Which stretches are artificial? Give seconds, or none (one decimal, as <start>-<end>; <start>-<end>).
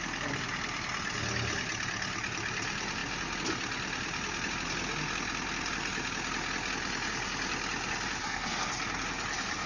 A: 8.2-8.7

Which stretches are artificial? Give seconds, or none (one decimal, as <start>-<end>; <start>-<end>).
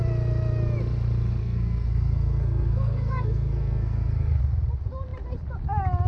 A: 1.4-4.4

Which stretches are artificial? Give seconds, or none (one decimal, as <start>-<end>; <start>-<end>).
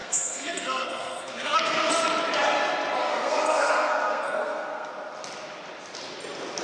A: 0.0-1.9; 3.0-4.9